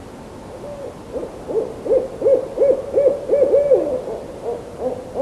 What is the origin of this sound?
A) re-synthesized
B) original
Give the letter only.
B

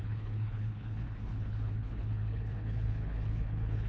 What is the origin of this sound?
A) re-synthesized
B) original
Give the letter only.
A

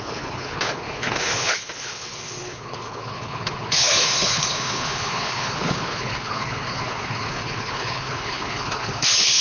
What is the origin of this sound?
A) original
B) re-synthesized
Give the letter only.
B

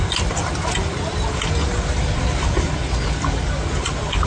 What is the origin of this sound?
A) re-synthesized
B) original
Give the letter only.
B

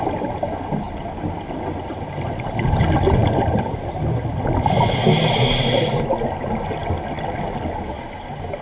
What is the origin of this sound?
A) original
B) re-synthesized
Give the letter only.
A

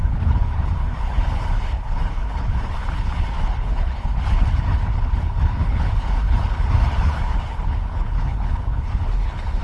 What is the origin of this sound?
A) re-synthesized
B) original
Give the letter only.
A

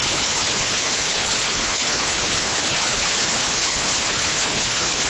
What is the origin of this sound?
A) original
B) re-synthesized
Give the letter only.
B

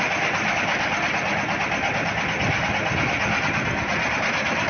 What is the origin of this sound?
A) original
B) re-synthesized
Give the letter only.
A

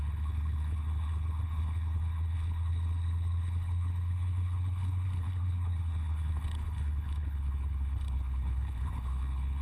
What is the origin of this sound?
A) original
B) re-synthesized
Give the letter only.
B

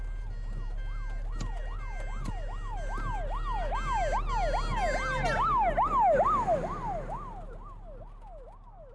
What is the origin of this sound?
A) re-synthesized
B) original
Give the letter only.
B